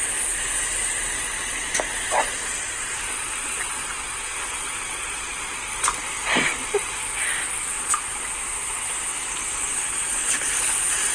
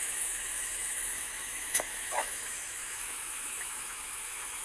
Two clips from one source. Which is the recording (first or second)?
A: first